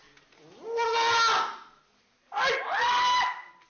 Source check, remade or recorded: recorded